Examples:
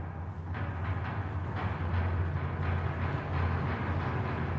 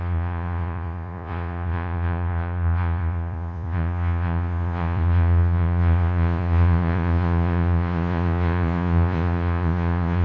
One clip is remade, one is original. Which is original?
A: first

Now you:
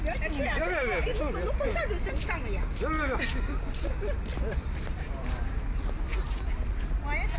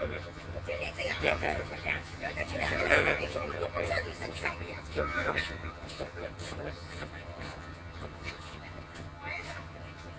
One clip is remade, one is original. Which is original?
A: first